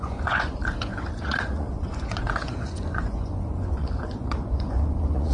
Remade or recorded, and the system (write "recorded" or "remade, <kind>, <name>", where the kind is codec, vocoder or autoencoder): remade, vocoder, Vocos